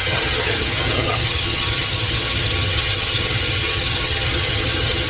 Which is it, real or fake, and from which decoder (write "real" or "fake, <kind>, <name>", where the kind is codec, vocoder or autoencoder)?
fake, vocoder, HiFi-GAN